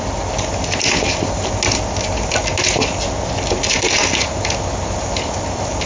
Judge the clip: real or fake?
real